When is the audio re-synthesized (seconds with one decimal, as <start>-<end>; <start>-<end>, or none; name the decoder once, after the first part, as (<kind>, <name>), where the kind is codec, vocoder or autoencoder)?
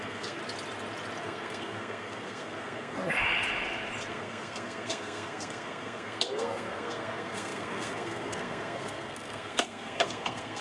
0.0-0.4 (codec, SNAC); 1.2-3.0; 4.1-10.6